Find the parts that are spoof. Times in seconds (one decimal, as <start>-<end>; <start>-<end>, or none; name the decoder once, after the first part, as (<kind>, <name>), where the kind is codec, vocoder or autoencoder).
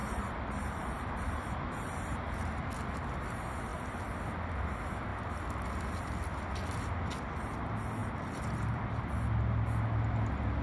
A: 0.0-2.6 (vocoder, BigVGAN v2); 8.0-9.0